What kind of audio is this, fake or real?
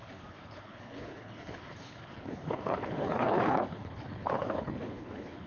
fake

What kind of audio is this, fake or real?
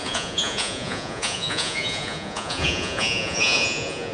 fake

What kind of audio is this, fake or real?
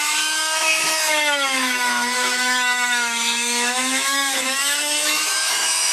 fake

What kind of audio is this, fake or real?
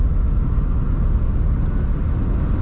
real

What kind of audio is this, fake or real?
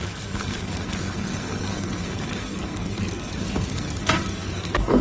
fake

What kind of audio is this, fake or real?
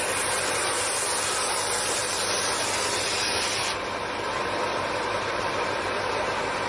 fake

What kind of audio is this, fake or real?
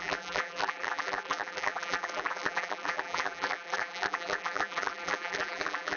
fake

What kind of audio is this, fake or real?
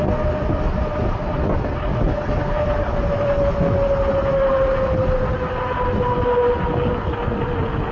real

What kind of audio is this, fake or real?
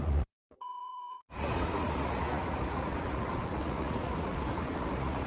fake